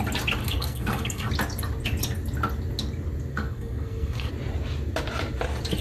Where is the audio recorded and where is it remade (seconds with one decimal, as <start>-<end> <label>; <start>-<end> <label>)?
0.0-0.4 recorded; 0.4-1.3 remade; 1.3-3.3 recorded; 3.3-4.3 remade; 4.3-5.8 recorded